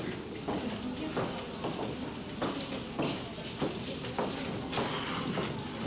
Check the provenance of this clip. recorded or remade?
recorded